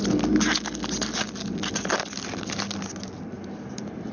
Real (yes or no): yes